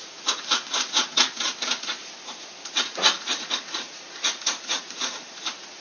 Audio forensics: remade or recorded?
remade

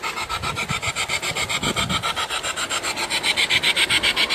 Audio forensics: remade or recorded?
recorded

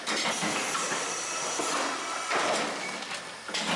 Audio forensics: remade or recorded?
recorded